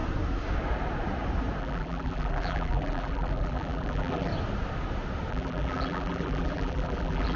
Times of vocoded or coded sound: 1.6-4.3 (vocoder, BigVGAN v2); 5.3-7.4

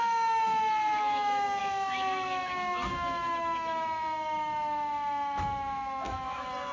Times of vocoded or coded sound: 0.0-1.6 (autoencoder, DAC-VAE); 2.9-6.7

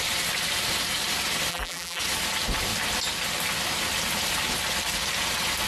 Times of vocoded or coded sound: 1.5-2.0 (vocoder, BigVGAN v2)

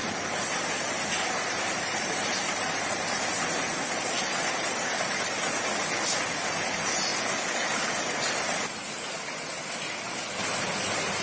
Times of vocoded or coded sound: 0.0-5.1 (vocoder, BigVGAN v2)

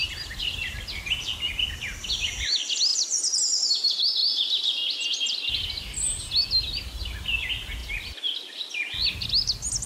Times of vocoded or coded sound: none

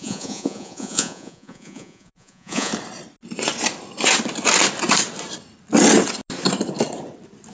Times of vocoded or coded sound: 0.0-2.7 (vocoder, Vocos)

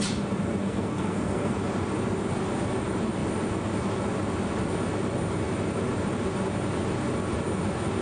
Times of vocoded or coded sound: 0.6-1.6 (codec, SNAC)

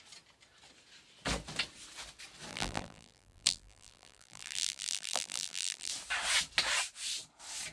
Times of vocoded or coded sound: 2.5-5.9 (vocoder, BigVGAN v2)